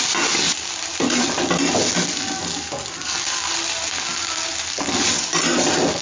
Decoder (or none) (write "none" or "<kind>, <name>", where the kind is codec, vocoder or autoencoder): none